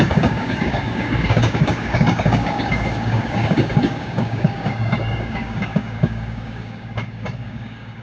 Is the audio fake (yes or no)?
yes